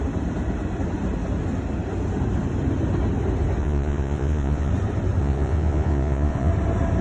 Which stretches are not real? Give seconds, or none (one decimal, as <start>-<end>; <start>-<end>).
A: 3.6-4.7; 5.2-6.5